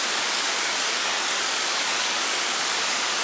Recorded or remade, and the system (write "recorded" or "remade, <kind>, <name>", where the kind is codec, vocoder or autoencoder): remade, codec, DAC